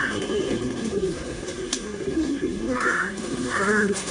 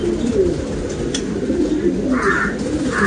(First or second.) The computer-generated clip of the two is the first